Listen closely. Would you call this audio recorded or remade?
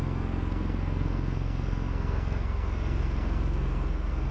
remade